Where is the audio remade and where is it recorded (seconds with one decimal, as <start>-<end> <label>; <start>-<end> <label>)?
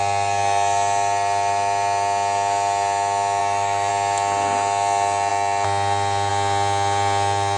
0.0-3.4 recorded; 3.4-3.9 remade; 3.9-7.6 recorded